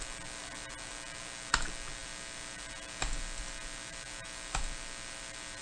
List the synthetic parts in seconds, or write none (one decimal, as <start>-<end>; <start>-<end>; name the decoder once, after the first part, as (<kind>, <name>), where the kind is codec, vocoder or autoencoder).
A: none